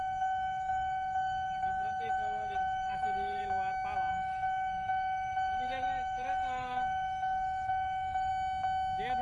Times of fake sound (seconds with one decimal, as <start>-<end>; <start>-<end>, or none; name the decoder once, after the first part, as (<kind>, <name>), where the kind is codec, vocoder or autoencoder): 0.0-3.4 (codec, DAC); 4.1-8.3